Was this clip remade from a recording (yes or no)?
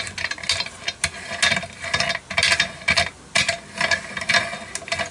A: no